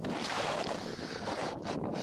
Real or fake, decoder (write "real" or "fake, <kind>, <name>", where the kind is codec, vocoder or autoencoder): fake, codec, DAC